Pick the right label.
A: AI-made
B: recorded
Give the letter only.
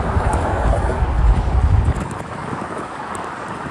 A